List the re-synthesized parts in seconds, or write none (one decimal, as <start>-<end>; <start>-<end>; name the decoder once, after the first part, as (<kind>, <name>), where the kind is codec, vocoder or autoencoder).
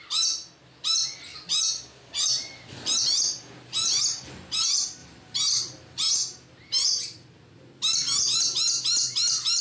1.3-4.0 (vocoder, BigVGAN v2); 5.0-6.1